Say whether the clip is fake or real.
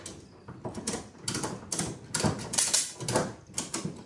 real